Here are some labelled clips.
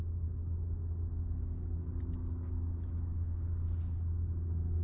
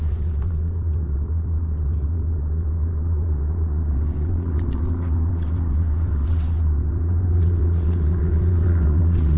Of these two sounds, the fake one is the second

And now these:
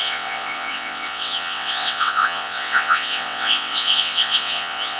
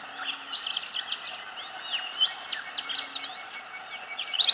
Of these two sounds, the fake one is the first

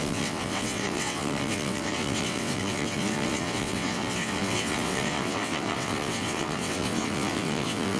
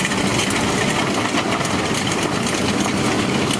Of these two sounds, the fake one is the first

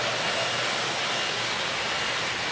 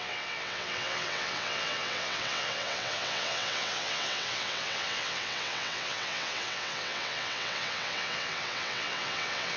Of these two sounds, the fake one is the second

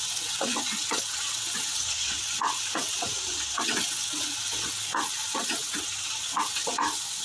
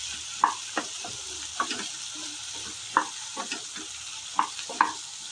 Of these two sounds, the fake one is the first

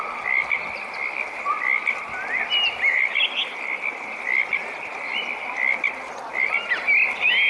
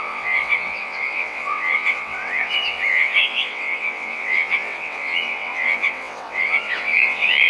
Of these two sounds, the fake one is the second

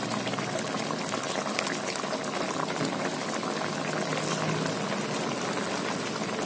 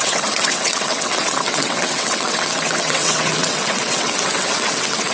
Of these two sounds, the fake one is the second